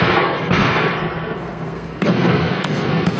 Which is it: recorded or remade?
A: remade